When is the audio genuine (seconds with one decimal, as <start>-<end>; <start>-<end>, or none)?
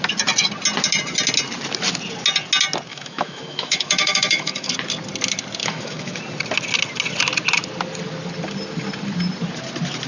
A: 0.0-2.9; 4.7-5.6; 6.2-10.1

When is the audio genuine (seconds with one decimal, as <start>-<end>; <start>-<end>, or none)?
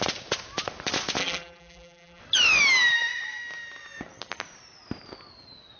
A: 0.0-1.2; 2.2-5.8